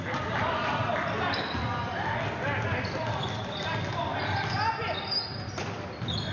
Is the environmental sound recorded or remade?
recorded